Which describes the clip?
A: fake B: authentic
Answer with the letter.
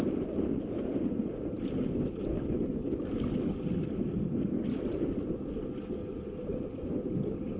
B